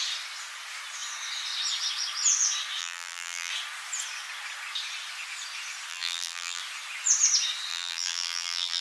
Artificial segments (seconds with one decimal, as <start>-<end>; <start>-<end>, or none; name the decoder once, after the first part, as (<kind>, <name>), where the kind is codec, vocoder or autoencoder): 2.8-3.5 (vocoder, BigVGAN v2); 5.9-6.6; 7.7-8.8